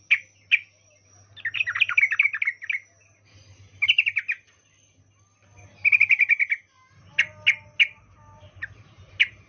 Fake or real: real